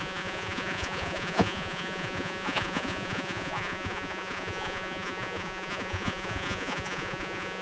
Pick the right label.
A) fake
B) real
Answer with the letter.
A